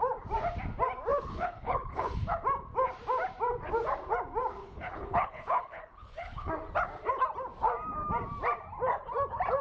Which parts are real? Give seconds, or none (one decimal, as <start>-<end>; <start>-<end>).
0.0-1.1; 2.2-4.6; 6.5-9.6